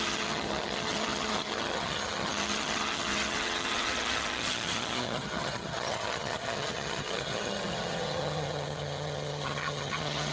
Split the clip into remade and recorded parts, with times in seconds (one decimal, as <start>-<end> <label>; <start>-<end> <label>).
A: 0.0-10.3 remade